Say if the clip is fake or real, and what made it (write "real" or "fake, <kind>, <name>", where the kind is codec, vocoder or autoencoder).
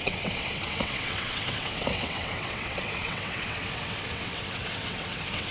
fake, vocoder, WaveNeXt